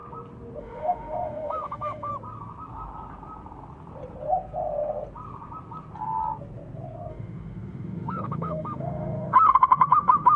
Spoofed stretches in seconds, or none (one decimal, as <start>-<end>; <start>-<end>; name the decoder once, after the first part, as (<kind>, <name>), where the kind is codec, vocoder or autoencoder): 0.6-2.1 (autoencoder, DAC-VAE); 7.1-10.4

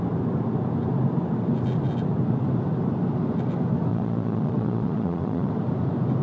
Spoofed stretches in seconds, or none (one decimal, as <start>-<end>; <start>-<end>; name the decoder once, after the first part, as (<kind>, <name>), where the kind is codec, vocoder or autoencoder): 3.9-5.5 (vocoder, Vocos)

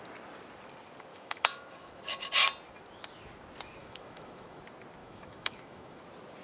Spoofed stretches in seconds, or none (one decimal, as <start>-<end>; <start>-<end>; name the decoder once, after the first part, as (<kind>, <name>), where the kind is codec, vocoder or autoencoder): 1.1-2.0 (autoencoder, DAC-VAE); 3.8-4.6; 5.0-6.0

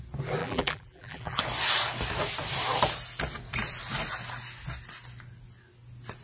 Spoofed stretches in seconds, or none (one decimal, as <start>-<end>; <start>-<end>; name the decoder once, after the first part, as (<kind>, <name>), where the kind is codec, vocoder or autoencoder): 0.4-1.4 (vocoder, BigVGAN v2)

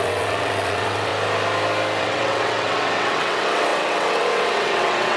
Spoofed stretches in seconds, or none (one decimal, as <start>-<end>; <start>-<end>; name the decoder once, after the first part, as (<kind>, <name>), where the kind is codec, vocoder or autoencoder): 0.0-1.1 (vocoder, WaveNeXt); 2.0-5.2